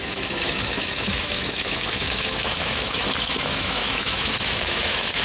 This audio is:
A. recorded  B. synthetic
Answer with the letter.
B